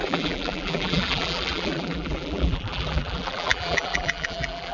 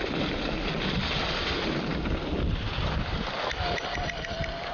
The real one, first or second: second